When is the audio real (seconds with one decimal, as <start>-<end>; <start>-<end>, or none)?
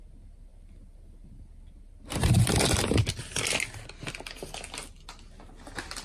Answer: 0.0-6.0